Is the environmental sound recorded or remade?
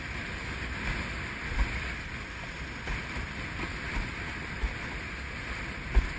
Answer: recorded